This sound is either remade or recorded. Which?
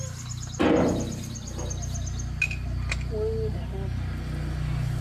recorded